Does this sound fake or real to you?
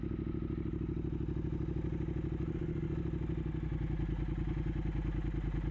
real